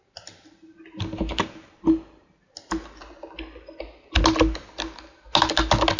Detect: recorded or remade recorded